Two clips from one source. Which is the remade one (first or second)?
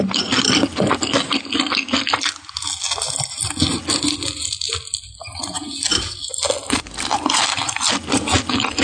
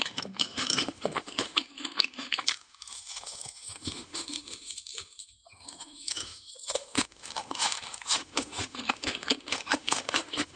second